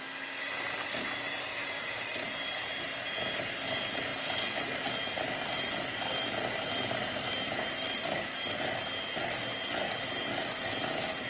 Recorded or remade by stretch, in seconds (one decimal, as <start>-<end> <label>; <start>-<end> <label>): 0.0-11.3 recorded